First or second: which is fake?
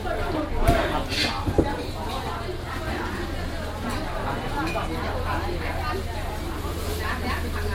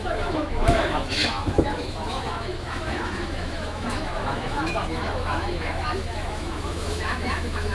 second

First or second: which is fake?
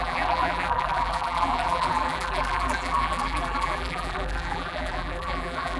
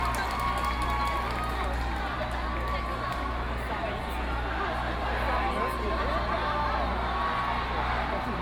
first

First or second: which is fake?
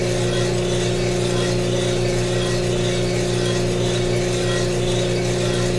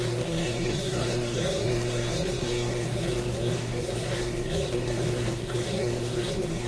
second